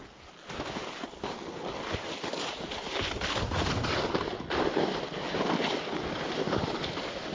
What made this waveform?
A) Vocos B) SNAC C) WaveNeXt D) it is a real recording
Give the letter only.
D